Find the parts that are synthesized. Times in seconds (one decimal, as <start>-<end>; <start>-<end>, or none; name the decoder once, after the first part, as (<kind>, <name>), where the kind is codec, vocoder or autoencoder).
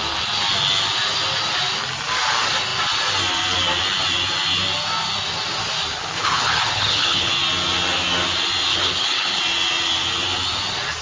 5.9-7.3 (codec, HILCodec); 8.7-9.4